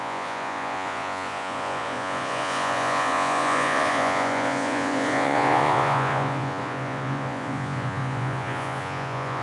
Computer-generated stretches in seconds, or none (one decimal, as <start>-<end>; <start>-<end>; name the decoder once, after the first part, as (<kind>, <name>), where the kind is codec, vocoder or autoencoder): 0.0-9.4 (vocoder, Vocos)